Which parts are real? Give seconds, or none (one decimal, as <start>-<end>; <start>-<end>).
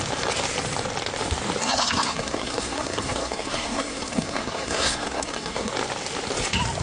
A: 0.0-1.6; 5.7-6.8